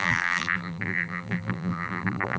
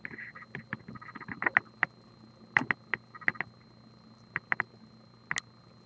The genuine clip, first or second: second